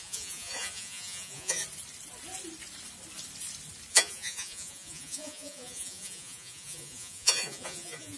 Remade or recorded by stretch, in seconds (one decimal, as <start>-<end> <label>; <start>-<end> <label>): 0.0-1.6 remade; 1.6-3.9 recorded; 3.9-8.2 remade